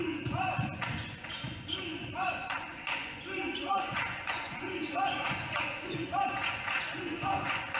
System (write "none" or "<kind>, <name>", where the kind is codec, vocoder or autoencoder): vocoder, Vocos